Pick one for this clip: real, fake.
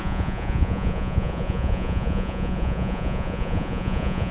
fake